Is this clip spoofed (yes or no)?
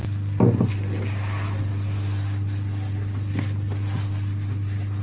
no